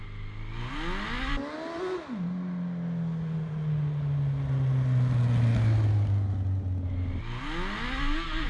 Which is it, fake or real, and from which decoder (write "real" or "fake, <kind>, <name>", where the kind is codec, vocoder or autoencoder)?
real